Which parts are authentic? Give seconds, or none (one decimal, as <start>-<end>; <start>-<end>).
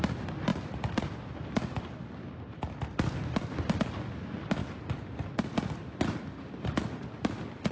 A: 0.0-7.7